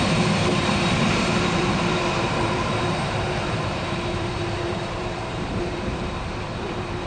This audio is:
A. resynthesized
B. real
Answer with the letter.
A